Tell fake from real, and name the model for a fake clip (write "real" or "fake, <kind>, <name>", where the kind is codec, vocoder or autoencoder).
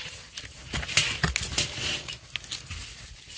real